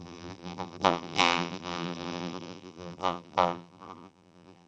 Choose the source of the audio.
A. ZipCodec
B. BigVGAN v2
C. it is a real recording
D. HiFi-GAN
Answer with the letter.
B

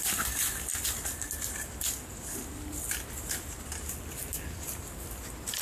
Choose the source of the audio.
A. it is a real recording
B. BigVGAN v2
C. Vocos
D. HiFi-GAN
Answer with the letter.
A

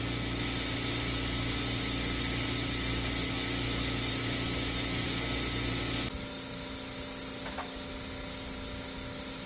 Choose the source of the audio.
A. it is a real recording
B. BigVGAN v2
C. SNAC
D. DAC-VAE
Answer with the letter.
A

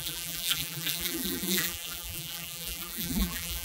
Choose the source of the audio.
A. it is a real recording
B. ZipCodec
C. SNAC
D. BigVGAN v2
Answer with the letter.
D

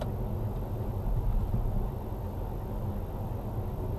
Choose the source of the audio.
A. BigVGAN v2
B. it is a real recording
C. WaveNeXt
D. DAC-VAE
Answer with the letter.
B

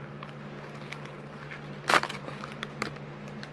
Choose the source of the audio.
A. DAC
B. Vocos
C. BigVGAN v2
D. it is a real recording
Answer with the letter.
D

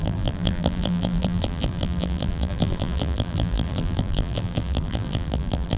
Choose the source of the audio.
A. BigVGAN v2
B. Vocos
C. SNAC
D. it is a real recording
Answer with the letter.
A